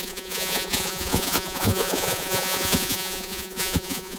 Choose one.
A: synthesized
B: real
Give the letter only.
A